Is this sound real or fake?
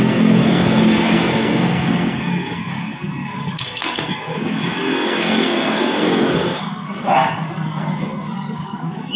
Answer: fake